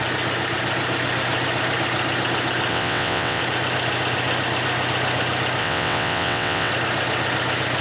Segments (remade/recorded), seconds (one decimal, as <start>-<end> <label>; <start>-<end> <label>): 0.0-2.7 recorded; 2.7-3.4 remade; 3.4-5.6 recorded; 5.6-6.7 remade; 6.7-7.8 recorded